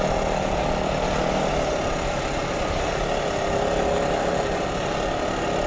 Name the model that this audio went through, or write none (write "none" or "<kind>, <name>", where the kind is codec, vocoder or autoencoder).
none